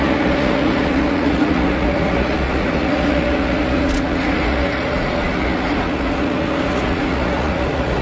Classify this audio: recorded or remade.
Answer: remade